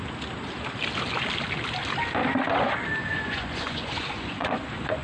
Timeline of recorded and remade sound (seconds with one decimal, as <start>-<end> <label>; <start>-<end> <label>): 0.0-3.0 recorded; 3.0-5.0 remade

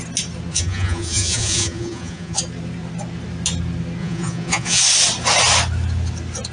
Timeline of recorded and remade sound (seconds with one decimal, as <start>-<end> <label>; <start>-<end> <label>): 0.0-0.5 recorded; 0.5-2.4 remade; 2.4-4.0 recorded; 4.0-4.8 remade; 4.8-6.5 recorded

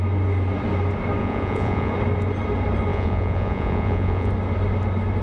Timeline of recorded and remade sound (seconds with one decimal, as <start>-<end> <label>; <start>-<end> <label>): 0.0-1.2 recorded; 1.2-1.9 remade; 1.9-2.9 recorded; 2.9-4.3 remade; 4.3-5.2 recorded

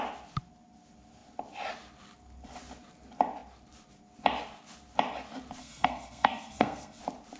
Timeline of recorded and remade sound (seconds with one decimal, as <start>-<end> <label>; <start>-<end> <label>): 0.0-5.6 recorded; 5.6-7.0 remade; 7.0-7.4 recorded

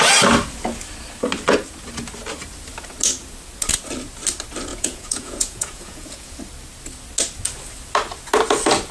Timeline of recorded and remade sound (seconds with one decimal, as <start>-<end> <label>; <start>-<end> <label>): 0.0-4.7 recorded; 4.7-6.4 remade; 6.4-8.9 recorded

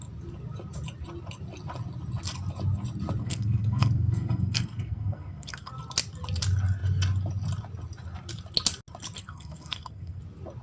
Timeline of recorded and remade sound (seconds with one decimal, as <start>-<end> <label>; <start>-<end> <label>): 0.0-3.2 recorded; 3.2-5.7 remade; 5.7-9.2 recorded; 9.2-10.2 remade; 10.2-10.6 recorded

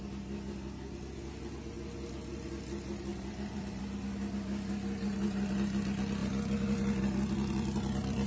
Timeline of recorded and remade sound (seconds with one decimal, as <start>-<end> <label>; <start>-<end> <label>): 0.0-3.1 recorded; 3.1-3.8 remade; 3.8-8.3 recorded

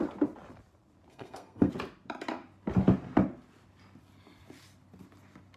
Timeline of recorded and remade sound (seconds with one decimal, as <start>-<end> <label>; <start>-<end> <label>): 0.0-1.1 recorded; 1.1-1.7 remade; 1.7-5.6 recorded